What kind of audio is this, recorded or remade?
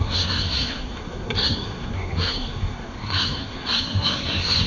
remade